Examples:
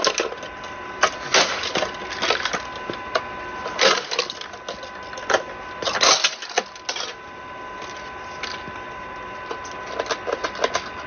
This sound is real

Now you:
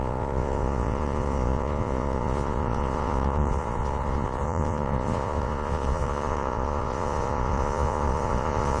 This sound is fake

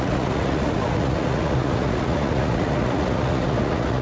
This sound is fake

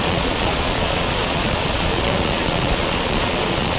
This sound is fake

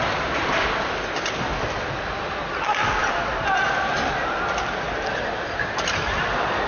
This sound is real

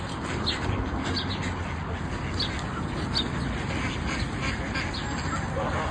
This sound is real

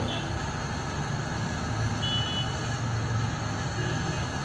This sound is real